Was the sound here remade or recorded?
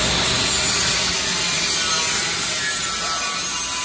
recorded